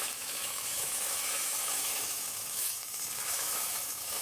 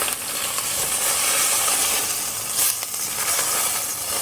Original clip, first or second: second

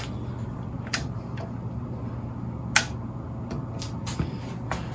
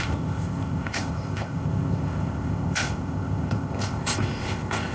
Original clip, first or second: first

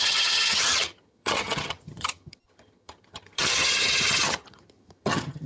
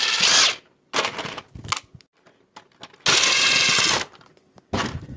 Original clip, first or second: second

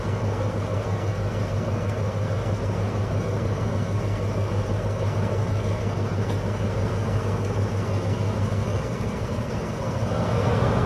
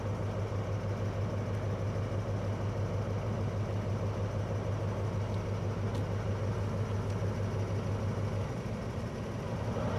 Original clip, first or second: second